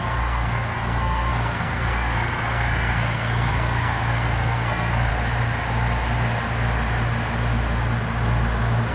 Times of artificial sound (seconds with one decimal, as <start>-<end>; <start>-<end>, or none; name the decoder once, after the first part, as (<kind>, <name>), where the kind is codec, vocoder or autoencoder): 0.0-5.1 (codec, SNAC)